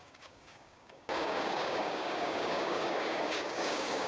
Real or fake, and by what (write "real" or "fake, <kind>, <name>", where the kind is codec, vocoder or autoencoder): fake, codec, DAC